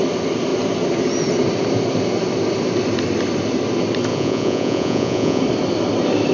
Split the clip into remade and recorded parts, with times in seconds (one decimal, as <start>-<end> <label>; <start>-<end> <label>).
0.0-4.1 recorded; 4.1-5.4 remade; 5.4-6.3 recorded